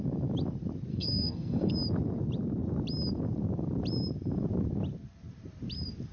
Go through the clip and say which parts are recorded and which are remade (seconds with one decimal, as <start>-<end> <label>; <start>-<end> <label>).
0.0-0.9 recorded; 0.9-1.7 remade; 1.7-6.1 recorded